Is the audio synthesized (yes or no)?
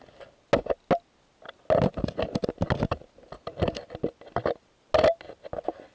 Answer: no